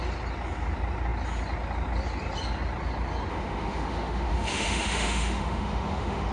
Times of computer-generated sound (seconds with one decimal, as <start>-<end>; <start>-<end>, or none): 3.3-6.3